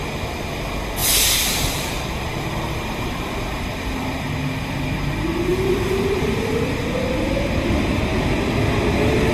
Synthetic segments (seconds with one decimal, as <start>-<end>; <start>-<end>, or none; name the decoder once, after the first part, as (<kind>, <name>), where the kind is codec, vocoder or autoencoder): 1.0-4.2 (vocoder, BigVGAN v2); 5.5-8.0